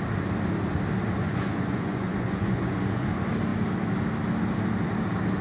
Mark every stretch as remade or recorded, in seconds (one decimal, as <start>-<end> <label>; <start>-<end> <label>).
0.0-1.2 recorded; 1.2-3.1 remade; 3.1-5.4 recorded

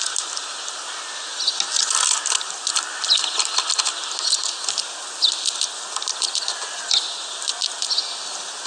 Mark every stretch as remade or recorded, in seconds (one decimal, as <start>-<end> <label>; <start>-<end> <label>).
0.0-8.7 recorded

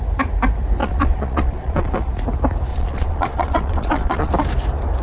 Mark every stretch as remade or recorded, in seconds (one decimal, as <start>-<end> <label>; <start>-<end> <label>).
0.0-0.8 recorded; 0.8-2.1 remade; 2.1-2.7 recorded; 2.7-4.3 remade; 4.3-5.0 recorded

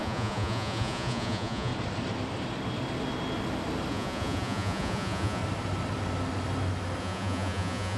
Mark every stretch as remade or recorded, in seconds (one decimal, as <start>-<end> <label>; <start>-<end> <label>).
0.0-1.7 remade; 1.7-3.9 recorded; 3.9-5.4 remade; 5.4-7.0 recorded; 7.0-8.0 remade

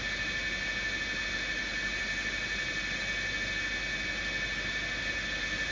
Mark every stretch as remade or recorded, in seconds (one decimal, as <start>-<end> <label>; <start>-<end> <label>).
0.0-5.7 recorded

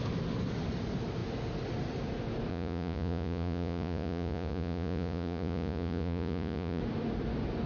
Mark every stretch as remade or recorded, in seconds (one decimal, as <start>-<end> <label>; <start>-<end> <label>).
0.0-2.5 recorded; 2.5-6.8 remade; 6.8-7.7 recorded

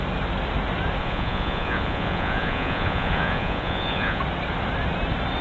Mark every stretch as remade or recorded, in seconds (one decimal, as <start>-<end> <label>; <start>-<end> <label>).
0.0-1.0 recorded; 1.0-4.2 remade; 4.2-5.4 recorded